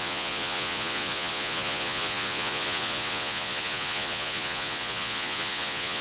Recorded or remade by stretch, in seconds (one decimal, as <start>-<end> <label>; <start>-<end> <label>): 0.0-6.0 remade